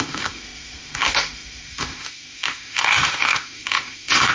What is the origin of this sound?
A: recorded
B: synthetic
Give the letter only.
B